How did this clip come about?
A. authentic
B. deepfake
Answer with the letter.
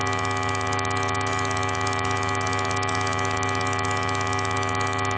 A